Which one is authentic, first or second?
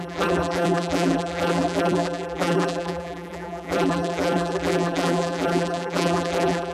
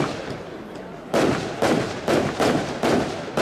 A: second